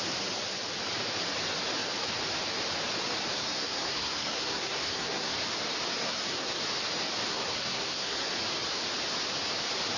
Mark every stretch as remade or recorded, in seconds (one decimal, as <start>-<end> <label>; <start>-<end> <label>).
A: 0.0-3.3 recorded; 3.3-5.3 remade; 5.3-6.0 recorded; 6.0-6.6 remade; 6.6-7.3 recorded; 7.3-8.3 remade; 8.3-10.0 recorded

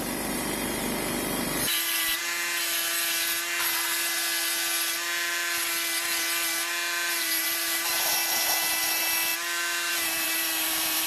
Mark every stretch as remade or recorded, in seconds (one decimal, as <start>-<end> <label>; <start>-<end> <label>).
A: 0.0-2.2 remade; 2.2-7.2 recorded; 7.2-9.3 remade; 9.3-9.9 recorded; 9.9-11.1 remade

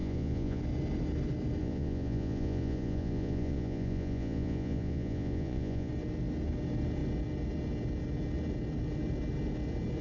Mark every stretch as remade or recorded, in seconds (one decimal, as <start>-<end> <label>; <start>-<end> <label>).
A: 0.0-0.6 remade; 0.6-1.6 recorded; 1.6-5.9 remade; 5.9-10.0 recorded

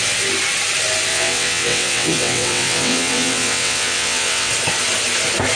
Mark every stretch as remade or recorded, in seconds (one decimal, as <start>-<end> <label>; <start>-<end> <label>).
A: 0.0-1.1 recorded; 1.1-4.5 remade; 4.5-5.6 recorded